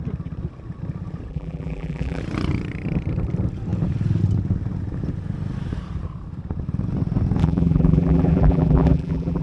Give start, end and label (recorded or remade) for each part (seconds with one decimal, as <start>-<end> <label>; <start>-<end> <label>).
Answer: 0.0-1.3 recorded; 1.3-2.2 remade; 2.2-7.4 recorded; 7.4-9.4 remade